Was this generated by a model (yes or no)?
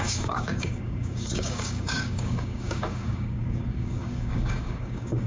yes